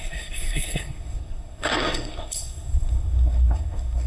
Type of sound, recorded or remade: remade